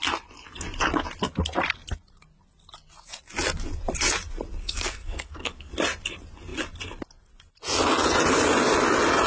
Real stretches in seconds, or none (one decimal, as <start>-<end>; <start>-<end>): 0.0-4.6; 5.7-9.3